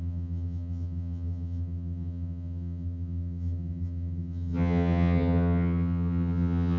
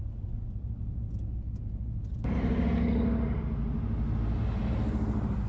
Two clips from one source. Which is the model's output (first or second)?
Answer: first